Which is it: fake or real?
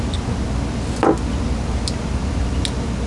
real